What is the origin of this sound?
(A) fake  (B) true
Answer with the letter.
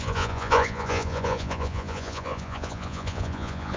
A